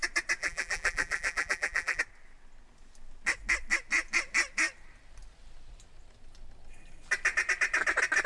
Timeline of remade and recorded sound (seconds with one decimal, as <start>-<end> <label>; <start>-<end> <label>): 0.0-0.4 recorded; 0.4-2.0 remade; 2.0-8.3 recorded

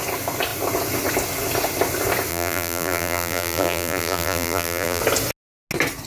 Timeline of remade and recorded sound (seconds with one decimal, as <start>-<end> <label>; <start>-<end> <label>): 0.0-2.3 recorded; 2.3-5.0 remade; 5.0-6.1 recorded